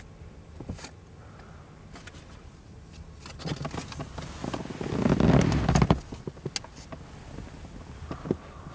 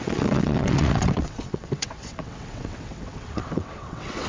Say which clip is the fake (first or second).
second